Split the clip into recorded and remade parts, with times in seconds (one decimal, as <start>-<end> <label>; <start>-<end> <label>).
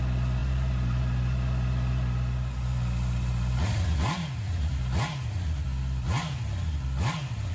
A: 0.0-7.5 recorded